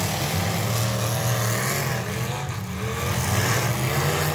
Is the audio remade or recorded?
recorded